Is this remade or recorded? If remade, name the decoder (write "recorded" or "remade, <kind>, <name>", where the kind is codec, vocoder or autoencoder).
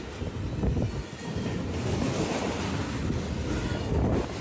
recorded